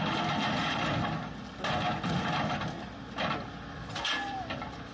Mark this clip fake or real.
real